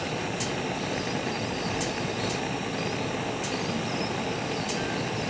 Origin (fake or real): real